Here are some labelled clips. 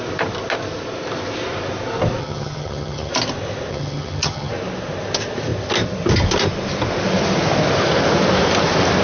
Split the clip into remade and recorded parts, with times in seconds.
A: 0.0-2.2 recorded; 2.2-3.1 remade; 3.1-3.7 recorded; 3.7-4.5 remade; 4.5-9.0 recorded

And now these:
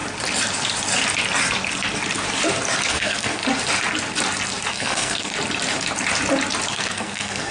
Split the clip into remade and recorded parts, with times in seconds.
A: 0.0-2.9 recorded; 2.9-3.4 remade; 3.4-4.7 recorded; 4.7-5.3 remade; 5.3-6.7 recorded; 6.7-7.5 remade

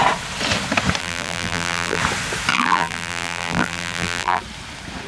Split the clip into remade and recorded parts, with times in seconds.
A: 0.0-1.0 recorded; 1.0-2.0 remade; 2.0-2.5 recorded; 2.5-4.4 remade; 4.4-5.1 recorded

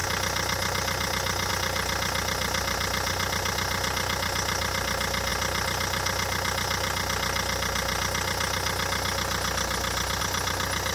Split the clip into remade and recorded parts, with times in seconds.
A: 0.0-10.9 recorded